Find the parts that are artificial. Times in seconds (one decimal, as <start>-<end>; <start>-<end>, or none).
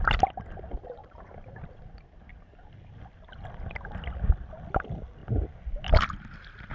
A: 1.0-1.5; 5.2-6.7